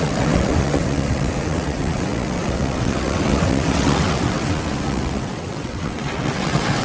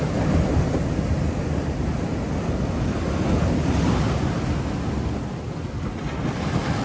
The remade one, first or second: first